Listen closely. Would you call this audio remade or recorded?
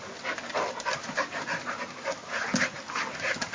recorded